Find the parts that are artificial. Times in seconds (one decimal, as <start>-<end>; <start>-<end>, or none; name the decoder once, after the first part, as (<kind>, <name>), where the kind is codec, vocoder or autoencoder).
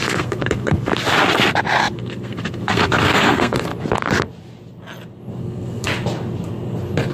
0.0-0.9 (codec, SNAC); 1.8-3.7; 5.4-5.9